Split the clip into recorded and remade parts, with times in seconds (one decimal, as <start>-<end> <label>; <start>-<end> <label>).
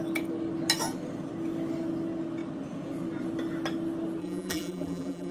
0.0-4.2 recorded; 4.2-5.3 remade